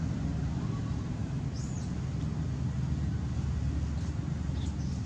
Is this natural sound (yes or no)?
yes